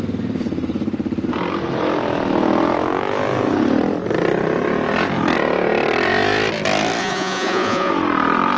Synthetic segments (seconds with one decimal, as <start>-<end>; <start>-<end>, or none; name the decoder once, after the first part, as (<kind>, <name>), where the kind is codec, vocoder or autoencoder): 7.0-7.9 (vocoder, Vocos)